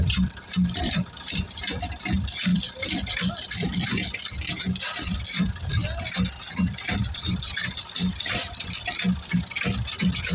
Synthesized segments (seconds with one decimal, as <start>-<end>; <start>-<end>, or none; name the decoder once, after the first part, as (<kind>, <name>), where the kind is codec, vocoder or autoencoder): 0.0-10.3 (vocoder, BigVGAN v2)